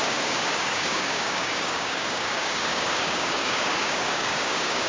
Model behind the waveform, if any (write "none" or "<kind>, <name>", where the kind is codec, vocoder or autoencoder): codec, DAC